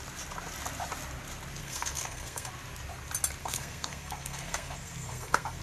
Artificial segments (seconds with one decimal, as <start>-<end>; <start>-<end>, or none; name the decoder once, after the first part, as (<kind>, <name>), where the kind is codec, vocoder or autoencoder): 1.6-2.5 (codec, SNAC); 3.4-5.6